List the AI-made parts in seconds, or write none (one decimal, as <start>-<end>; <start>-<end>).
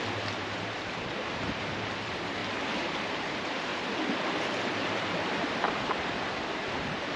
0.0-2.4; 3.1-3.7; 5.4-7.2